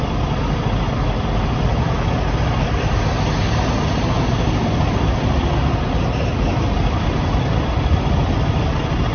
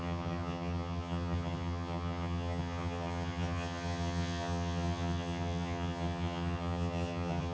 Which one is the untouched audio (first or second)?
first